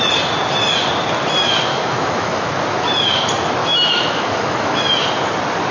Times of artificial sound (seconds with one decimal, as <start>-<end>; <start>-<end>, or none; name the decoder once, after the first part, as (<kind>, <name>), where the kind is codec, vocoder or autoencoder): 1.7-2.5 (autoencoder, DAC-VAE); 3.6-4.8